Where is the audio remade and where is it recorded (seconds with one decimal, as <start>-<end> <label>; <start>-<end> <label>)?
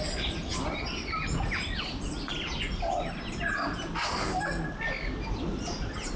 0.0-6.2 recorded